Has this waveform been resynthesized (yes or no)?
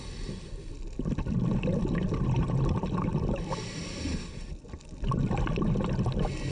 no